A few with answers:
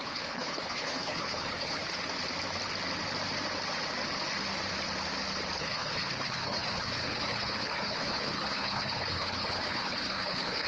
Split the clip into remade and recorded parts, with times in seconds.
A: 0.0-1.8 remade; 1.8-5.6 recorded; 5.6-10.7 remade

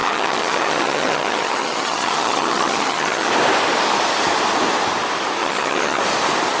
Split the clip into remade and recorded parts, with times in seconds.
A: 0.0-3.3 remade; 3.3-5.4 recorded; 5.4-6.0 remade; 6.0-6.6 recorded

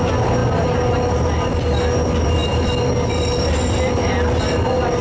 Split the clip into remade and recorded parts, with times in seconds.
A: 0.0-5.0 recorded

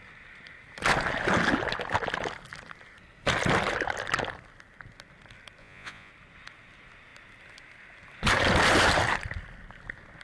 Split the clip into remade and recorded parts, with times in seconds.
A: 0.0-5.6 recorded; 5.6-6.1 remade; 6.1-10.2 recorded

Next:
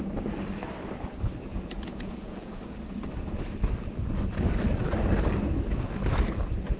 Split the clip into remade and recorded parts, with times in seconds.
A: 0.0-1.5 recorded; 1.5-2.6 remade; 2.6-6.8 recorded

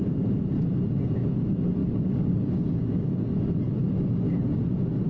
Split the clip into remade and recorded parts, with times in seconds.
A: 0.0-1.8 recorded; 1.8-3.3 remade; 3.3-5.1 recorded

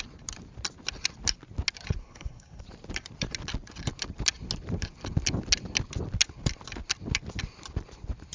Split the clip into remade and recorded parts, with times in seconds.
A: 0.0-2.0 recorded; 2.0-2.6 remade; 2.6-8.3 recorded